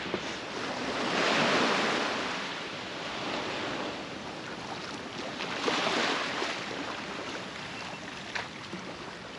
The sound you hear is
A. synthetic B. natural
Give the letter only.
B